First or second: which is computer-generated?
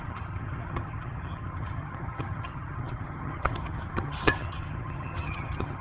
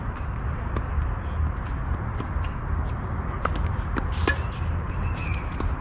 first